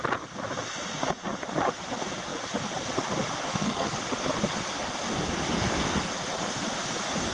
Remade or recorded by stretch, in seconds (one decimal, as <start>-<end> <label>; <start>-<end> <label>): 0.0-3.5 recorded; 3.5-4.0 remade; 4.0-7.3 recorded